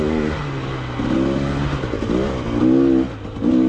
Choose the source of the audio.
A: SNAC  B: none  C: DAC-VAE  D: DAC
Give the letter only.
B